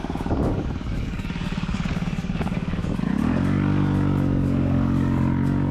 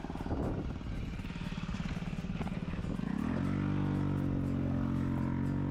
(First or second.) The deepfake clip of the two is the first